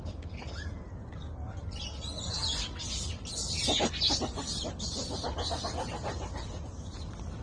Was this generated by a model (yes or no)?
no